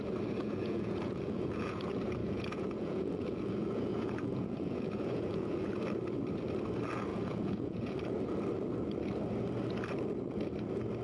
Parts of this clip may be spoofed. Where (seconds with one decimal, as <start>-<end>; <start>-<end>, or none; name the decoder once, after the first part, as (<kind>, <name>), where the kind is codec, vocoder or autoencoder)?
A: 0.4-1.8 (vocoder, Vocos); 2.2-5.8; 7.1-8.0